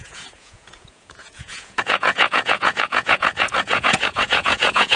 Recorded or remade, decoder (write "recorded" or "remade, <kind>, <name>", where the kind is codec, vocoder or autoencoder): remade, vocoder, Vocos